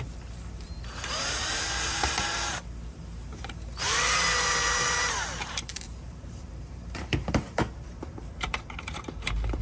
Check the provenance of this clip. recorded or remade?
remade